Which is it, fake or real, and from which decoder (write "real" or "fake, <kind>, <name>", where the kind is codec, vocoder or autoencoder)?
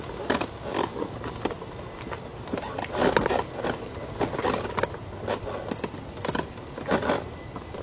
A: real